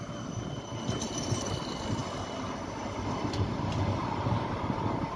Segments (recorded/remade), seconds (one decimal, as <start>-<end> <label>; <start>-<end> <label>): 0.0-5.2 recorded